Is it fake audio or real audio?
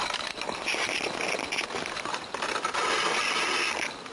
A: real